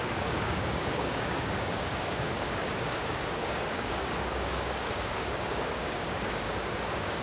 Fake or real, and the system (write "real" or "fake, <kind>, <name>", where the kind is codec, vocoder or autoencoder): fake, codec, DAC